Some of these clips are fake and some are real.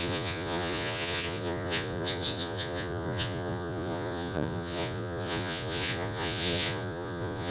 fake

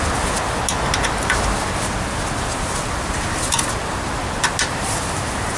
real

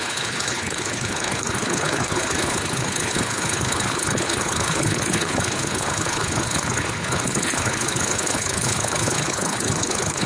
fake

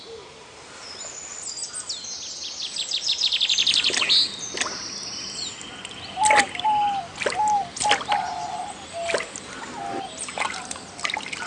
real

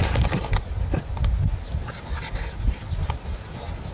real